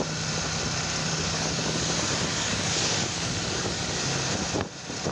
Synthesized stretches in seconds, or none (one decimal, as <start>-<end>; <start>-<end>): 1.0-1.9; 2.3-3.9